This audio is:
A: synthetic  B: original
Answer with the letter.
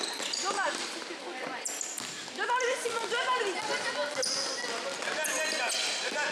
B